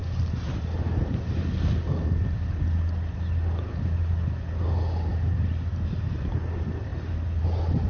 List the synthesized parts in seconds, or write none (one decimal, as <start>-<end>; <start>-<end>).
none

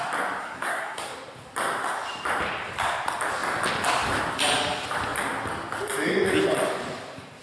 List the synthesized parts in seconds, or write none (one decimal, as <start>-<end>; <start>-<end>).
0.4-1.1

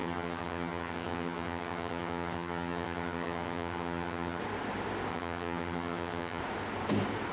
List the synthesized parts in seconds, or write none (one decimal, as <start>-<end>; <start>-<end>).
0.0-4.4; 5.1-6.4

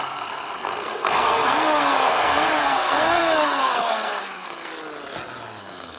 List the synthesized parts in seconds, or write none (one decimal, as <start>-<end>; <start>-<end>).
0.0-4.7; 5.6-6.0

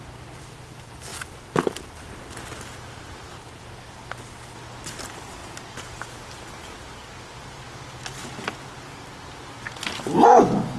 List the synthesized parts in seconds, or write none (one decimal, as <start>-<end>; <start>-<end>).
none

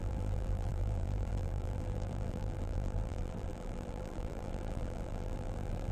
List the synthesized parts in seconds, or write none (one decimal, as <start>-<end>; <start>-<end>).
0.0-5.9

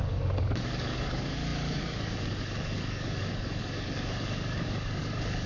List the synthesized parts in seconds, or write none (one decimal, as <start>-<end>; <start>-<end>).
0.0-5.5

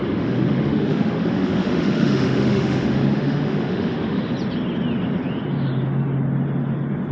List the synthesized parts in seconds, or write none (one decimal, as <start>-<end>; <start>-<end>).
0.0-4.3